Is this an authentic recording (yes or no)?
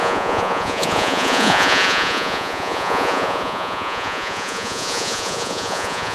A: no